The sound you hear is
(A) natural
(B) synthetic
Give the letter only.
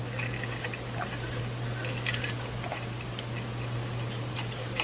A